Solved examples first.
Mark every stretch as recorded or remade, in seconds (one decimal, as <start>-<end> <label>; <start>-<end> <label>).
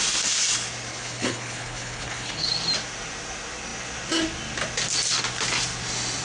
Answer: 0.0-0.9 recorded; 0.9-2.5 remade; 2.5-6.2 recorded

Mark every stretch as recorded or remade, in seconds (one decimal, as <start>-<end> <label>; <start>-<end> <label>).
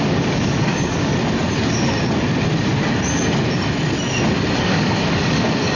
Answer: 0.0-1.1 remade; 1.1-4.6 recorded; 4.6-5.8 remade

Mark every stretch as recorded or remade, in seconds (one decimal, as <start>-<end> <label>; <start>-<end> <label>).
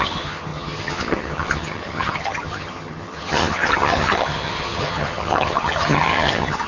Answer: 0.0-6.7 remade